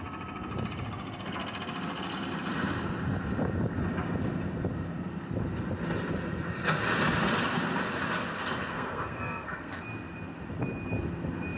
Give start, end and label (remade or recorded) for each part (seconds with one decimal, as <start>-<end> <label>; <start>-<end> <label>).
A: 0.0-8.7 recorded; 8.7-9.8 remade; 9.8-11.6 recorded